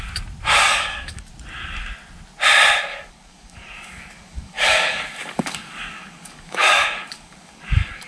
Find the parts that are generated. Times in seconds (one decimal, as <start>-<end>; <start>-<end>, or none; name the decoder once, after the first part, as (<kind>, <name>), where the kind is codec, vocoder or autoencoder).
0.6-1.3 (codec, DAC); 2.9-8.1